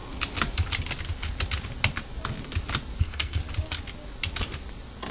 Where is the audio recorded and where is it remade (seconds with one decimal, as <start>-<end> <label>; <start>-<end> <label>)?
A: 0.0-3.0 recorded; 3.0-3.4 remade; 3.4-5.1 recorded